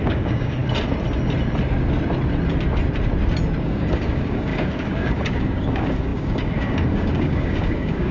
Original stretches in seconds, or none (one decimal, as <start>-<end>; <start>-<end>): 0.6-3.6